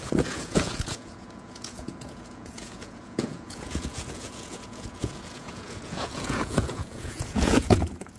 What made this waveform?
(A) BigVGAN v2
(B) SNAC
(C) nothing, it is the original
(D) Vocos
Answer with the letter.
D